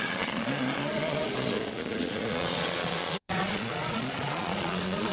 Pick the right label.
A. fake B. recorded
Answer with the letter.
A